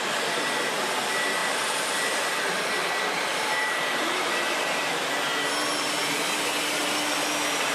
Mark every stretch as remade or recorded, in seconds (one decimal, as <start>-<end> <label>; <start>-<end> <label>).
0.0-1.4 recorded; 1.4-2.2 remade; 2.2-3.3 recorded; 3.3-4.6 remade; 4.6-7.7 recorded